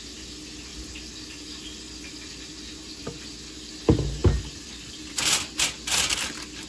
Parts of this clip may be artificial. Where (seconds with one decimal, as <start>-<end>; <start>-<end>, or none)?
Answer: none